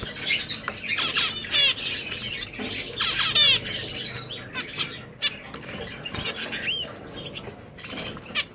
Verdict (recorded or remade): recorded